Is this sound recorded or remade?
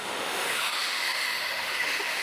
remade